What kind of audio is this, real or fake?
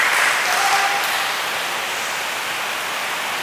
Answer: real